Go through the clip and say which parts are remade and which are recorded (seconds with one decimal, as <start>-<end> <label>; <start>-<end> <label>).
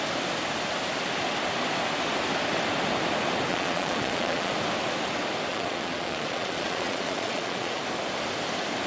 0.0-3.5 recorded; 3.5-4.5 remade; 4.5-5.5 recorded; 5.5-7.8 remade; 7.8-8.9 recorded